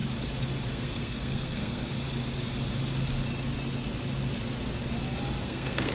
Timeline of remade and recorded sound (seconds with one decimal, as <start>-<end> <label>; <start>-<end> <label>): 0.0-0.7 recorded; 0.7-1.9 remade; 1.9-5.4 recorded; 5.4-5.9 remade